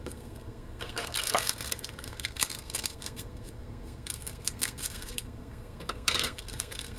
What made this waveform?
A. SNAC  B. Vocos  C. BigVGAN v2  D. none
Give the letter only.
A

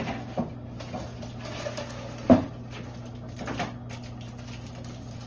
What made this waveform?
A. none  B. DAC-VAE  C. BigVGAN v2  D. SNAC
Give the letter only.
A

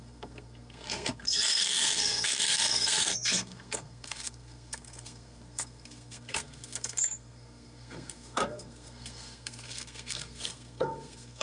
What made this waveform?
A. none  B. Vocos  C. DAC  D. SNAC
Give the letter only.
D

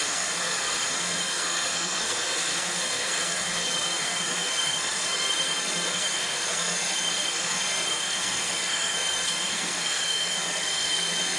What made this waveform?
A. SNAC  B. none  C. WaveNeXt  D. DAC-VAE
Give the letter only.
A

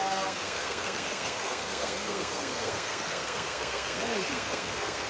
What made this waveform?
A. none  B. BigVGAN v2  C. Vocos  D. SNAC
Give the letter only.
D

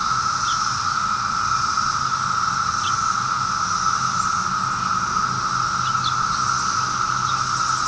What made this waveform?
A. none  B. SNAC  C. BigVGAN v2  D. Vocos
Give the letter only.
A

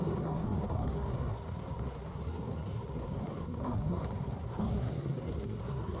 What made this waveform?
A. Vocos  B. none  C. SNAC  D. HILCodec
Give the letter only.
C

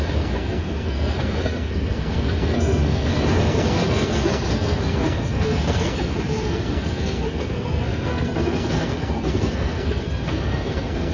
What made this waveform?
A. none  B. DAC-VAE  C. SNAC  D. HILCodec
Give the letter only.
C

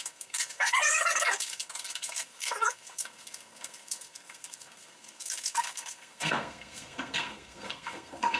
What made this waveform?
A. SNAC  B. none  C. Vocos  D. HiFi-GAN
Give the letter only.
A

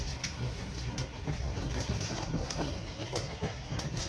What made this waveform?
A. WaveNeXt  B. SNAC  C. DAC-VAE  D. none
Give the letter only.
B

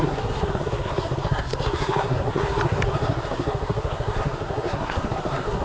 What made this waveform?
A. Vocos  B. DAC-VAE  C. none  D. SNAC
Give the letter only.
D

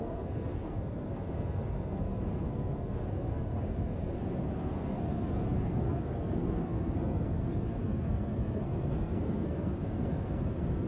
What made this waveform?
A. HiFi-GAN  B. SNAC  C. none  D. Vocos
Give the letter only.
B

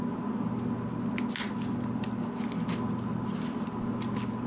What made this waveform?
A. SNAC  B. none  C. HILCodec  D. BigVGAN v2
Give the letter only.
B